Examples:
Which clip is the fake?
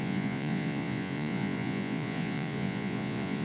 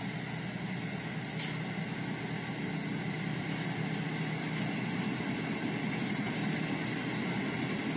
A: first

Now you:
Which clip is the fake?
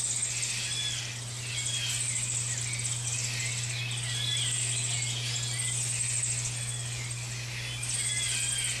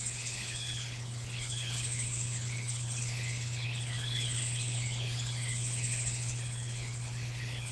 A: second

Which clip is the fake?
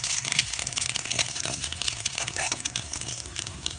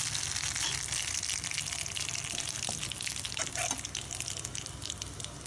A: first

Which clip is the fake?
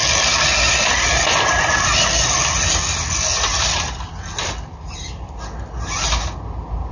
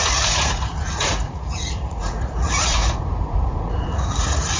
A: second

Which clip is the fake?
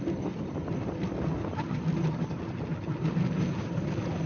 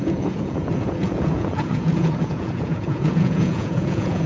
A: second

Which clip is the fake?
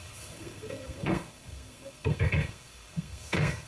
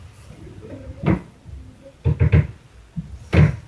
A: first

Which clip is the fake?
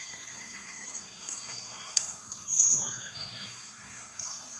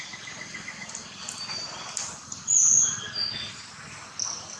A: first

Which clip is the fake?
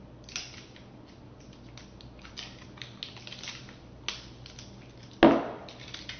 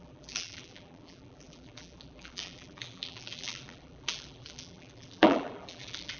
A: second